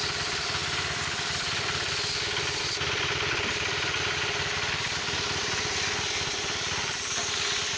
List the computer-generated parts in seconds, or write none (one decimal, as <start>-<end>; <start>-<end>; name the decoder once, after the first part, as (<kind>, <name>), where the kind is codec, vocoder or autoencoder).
none